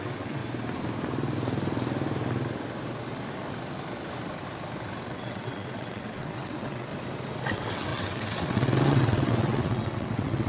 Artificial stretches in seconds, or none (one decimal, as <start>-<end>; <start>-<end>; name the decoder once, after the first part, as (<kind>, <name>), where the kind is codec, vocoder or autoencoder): 0.0-0.4 (vocoder, WaveNeXt); 5.0-6.9; 7.5-10.5